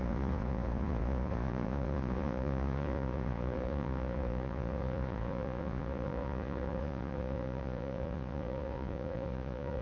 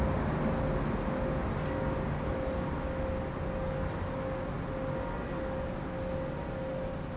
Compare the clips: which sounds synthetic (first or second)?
first